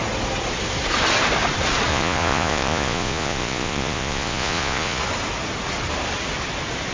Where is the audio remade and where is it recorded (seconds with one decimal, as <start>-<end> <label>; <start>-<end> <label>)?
0.0-1.9 recorded; 1.9-5.0 remade; 5.0-6.9 recorded